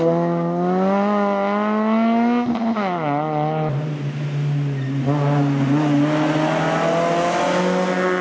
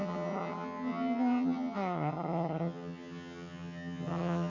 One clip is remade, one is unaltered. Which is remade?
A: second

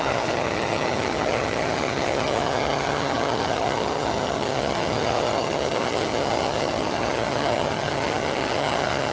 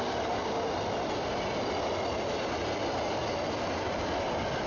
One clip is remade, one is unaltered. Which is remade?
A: first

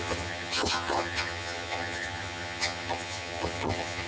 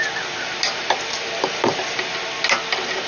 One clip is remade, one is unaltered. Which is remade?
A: first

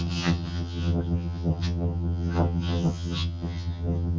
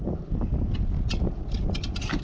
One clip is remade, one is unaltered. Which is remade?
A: first